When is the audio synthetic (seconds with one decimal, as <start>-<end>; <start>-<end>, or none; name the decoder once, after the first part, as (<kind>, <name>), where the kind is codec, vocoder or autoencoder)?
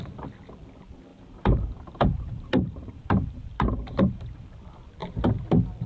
1.1-4.6 (vocoder, BigVGAN v2)